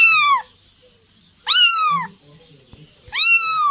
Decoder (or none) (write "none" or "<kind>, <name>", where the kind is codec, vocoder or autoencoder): none